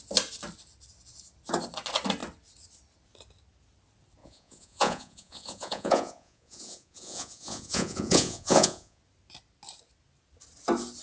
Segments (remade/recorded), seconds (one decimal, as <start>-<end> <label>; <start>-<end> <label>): 0.0-4.2 recorded; 4.2-9.0 remade; 9.0-11.0 recorded